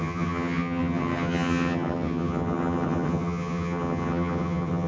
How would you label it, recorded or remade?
remade